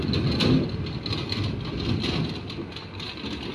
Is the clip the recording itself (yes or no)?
yes